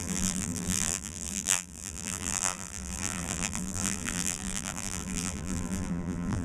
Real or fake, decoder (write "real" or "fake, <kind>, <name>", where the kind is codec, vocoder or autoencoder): fake, vocoder, BigVGAN v2